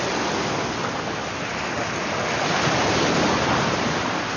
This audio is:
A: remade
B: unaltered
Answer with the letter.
B